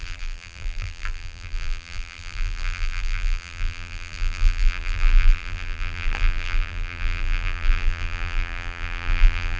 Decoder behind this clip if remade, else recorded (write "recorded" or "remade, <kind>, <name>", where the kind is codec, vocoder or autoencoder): remade, vocoder, BigVGAN v2